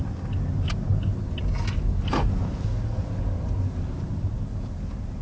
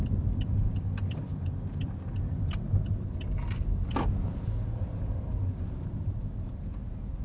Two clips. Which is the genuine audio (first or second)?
first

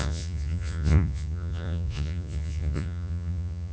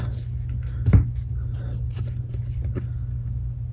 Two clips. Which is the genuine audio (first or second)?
second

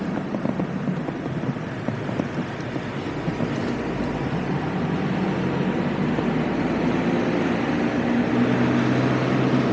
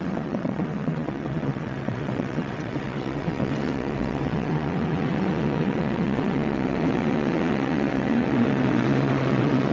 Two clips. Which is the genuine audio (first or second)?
first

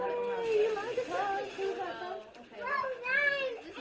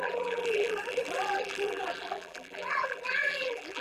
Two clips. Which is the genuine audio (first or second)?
first